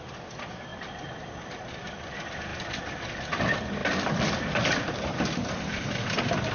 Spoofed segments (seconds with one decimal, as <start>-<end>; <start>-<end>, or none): 0.0-0.7; 1.4-6.5